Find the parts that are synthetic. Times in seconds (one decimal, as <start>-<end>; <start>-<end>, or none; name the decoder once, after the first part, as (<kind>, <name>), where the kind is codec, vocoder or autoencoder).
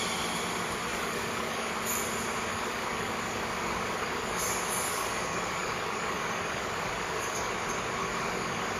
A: 0.9-1.7 (codec, DAC); 2.5-7.5; 8.0-8.8